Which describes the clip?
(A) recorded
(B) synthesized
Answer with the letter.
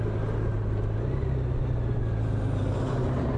A